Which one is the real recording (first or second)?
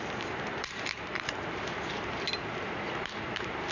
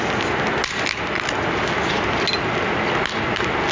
second